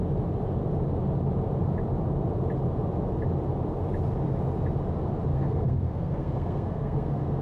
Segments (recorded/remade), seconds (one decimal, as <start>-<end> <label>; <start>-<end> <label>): 0.0-5.3 recorded; 5.3-7.4 remade